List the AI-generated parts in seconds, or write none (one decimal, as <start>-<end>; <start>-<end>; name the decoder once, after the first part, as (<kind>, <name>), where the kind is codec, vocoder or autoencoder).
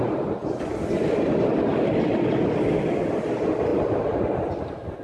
none